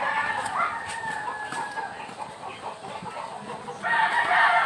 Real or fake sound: real